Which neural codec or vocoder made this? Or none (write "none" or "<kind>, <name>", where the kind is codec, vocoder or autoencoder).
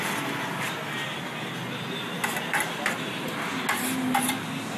none